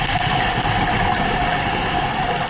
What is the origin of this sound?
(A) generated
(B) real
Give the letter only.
B